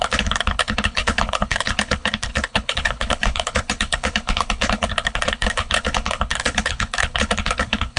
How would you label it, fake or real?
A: fake